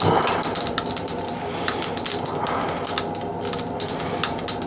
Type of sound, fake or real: real